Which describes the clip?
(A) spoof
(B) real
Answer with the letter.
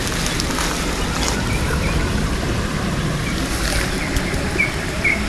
B